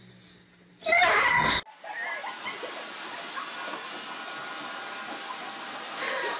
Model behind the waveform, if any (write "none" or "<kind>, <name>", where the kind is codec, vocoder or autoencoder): none